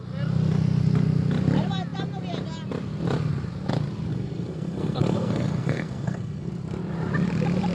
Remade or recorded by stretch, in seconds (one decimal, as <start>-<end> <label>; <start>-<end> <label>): 0.0-4.1 recorded; 4.1-6.5 remade; 6.5-7.7 recorded